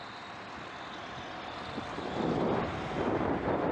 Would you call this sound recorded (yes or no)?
yes